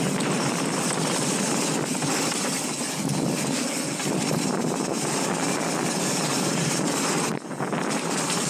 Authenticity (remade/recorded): recorded